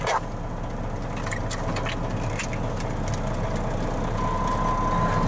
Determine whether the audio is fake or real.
real